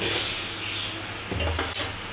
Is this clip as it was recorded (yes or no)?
yes